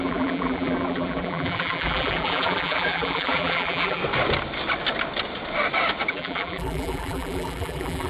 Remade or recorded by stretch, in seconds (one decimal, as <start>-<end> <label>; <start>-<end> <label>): 0.0-4.0 remade; 4.0-6.1 recorded; 6.1-8.1 remade